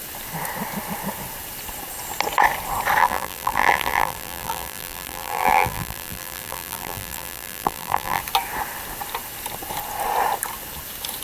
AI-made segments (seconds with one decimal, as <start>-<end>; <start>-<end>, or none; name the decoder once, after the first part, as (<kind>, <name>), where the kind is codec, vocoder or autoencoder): 3.0-8.2 (vocoder, BigVGAN v2)